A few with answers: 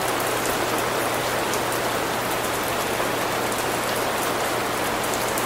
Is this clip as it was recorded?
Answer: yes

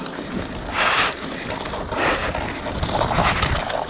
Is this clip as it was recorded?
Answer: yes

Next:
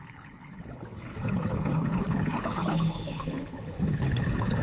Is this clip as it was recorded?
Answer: no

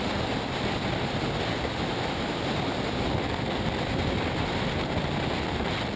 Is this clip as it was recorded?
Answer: yes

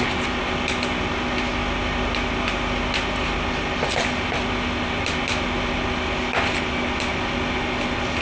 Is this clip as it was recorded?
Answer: yes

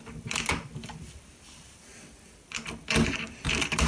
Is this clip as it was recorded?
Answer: no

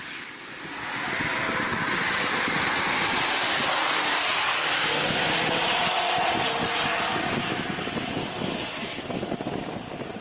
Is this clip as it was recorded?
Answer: yes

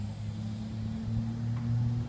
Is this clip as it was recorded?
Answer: yes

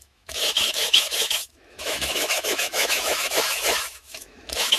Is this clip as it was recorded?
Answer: no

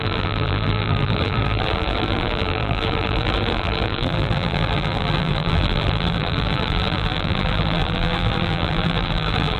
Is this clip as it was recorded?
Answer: no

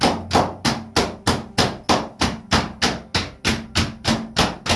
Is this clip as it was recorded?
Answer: yes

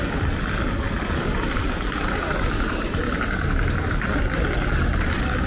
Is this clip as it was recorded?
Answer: yes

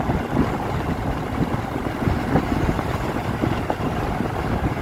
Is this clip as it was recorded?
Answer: yes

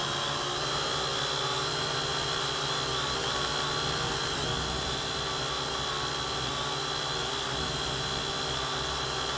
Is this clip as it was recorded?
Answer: yes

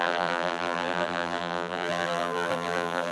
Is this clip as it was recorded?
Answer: no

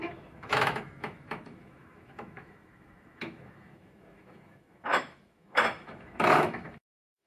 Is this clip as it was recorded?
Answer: no